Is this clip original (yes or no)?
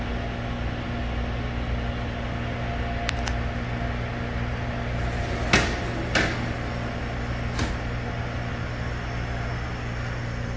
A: yes